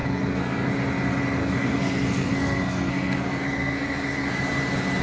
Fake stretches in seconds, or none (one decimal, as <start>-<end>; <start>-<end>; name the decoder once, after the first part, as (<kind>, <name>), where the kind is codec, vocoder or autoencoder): 0.0-0.7 (codec, SNAC); 1.4-4.4